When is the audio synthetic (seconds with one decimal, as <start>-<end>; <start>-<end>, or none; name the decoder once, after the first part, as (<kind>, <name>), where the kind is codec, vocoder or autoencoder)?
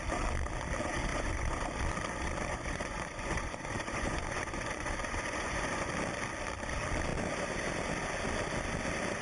1.1-1.7 (vocoder, Vocos); 2.5-5.9